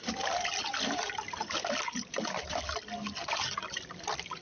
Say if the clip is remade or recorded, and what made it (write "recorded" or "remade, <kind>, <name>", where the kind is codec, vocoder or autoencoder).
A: recorded